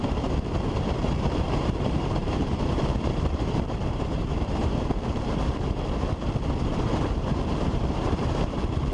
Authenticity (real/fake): fake